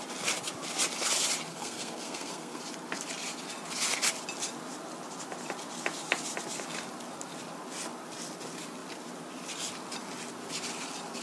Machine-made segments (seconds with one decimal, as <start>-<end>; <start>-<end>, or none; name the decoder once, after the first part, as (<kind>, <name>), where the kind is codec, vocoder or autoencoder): 1.5-2.6 (codec, SNAC)